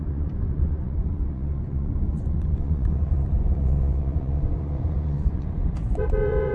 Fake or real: fake